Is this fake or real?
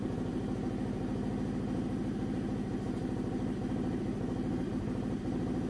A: real